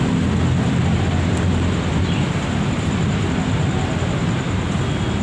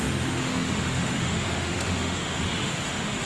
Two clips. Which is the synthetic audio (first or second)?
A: second